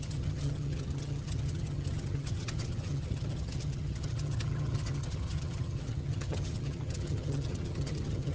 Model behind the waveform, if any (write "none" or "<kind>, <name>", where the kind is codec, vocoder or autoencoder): vocoder, HiFi-GAN